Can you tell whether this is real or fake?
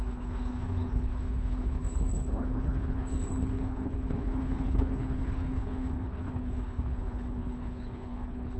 fake